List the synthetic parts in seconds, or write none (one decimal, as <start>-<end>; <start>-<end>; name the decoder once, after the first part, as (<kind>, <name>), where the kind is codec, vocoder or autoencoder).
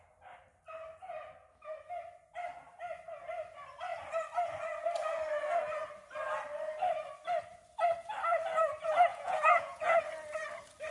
9.1-10.0 (vocoder, Vocos)